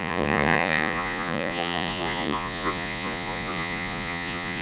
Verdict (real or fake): fake